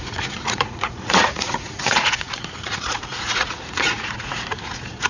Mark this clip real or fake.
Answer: fake